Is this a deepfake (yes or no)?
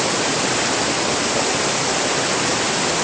no